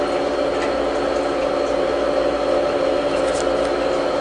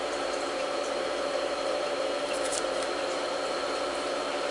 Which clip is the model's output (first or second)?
second